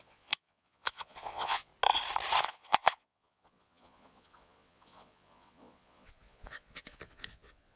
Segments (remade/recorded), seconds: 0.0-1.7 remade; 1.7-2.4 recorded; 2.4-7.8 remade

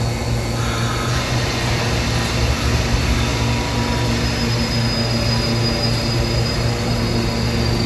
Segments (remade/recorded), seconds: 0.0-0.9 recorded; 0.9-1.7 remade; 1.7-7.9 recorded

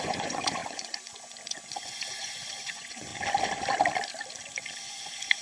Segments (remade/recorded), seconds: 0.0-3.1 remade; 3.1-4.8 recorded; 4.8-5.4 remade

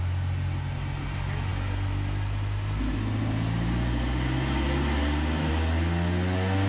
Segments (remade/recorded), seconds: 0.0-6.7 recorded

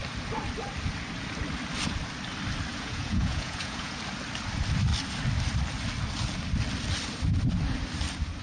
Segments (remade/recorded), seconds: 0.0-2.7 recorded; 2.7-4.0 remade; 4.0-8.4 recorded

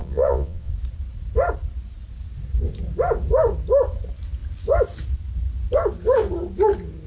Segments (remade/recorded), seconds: 0.0-0.7 remade; 0.7-7.1 recorded

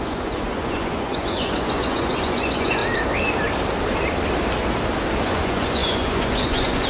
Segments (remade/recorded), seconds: 0.0-2.8 remade; 2.8-5.2 recorded; 5.2-6.9 remade